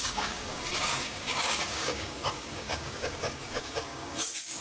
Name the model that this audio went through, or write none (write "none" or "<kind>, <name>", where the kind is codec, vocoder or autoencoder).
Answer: codec, DAC